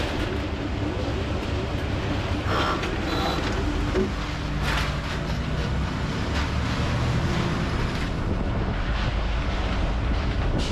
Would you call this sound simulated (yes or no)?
no